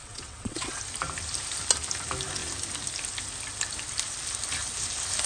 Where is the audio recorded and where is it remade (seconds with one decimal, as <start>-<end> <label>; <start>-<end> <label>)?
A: 0.0-0.8 remade; 0.8-5.3 recorded